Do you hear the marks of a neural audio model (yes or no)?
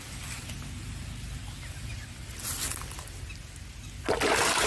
no